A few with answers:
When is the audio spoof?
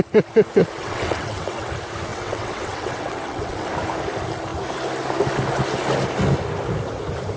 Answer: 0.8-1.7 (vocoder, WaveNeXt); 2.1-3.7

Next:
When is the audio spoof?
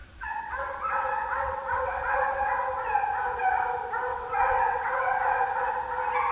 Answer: 0.0-2.8 (vocoder, WaveNeXt); 4.1-5.7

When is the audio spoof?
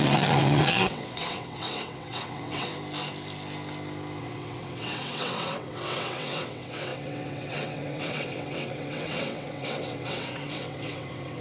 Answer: 0.0-2.7 (vocoder, WaveNeXt); 4.2-11.4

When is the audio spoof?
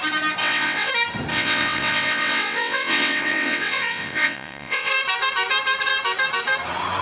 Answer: 0.4-0.9 (vocoder, WaveNeXt); 1.3-4.9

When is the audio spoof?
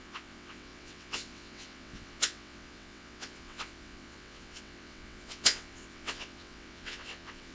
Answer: 0.0-7.5 (vocoder, WaveNeXt)